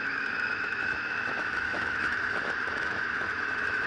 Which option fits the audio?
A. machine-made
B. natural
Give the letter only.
A